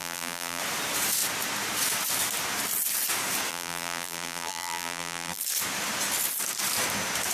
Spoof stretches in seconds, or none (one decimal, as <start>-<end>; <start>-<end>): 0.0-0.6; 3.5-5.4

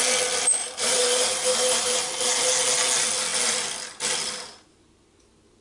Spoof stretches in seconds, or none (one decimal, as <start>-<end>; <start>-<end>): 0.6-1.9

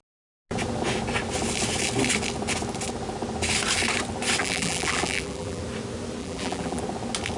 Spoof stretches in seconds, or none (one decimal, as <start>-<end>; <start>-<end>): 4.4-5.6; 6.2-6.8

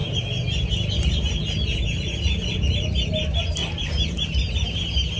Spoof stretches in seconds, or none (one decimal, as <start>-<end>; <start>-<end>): 3.6-4.4

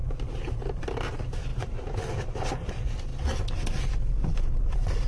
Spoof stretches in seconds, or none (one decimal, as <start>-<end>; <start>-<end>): 0.8-3.1; 4.4-5.1